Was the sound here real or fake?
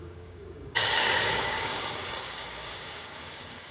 fake